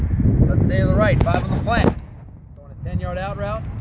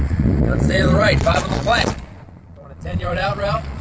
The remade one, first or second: second